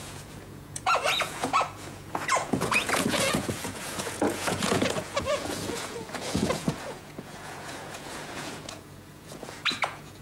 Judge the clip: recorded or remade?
remade